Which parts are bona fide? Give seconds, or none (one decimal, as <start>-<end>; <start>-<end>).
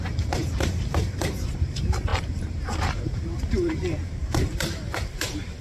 none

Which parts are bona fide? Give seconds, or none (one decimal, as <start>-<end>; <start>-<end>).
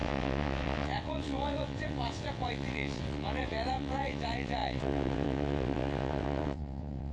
none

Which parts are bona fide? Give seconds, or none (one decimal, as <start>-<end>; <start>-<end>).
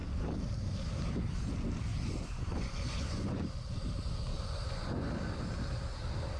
0.0-1.9; 3.6-4.3; 5.1-6.4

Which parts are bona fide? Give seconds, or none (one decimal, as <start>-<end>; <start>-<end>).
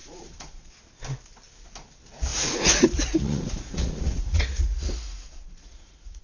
0.7-2.3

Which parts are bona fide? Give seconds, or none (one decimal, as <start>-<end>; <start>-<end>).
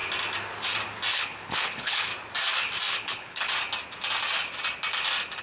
0.0-1.1; 2.1-2.9; 3.5-5.4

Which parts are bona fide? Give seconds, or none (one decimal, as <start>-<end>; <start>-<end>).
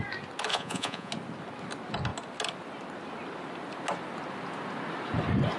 0.0-0.5; 1.1-5.6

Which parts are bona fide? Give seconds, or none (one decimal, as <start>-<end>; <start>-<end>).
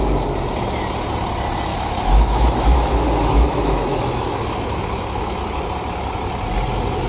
0.0-1.7; 5.5-7.1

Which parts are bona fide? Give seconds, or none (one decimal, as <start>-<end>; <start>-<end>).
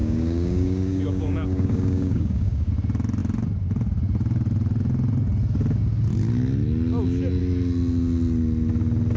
2.7-9.2